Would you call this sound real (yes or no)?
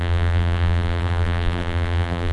no